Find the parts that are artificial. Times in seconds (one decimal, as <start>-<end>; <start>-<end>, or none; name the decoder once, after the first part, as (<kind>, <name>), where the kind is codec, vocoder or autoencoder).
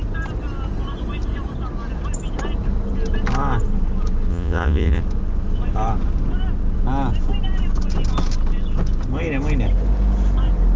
4.3-5.0 (vocoder, Vocos)